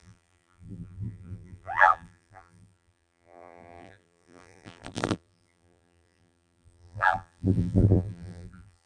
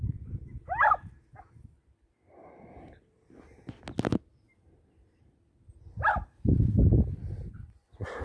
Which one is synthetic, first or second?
first